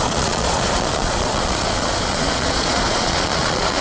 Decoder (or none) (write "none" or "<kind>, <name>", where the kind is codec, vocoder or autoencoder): vocoder, Vocos